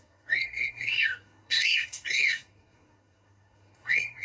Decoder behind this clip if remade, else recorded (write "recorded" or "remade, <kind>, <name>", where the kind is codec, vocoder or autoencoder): remade, codec, SNAC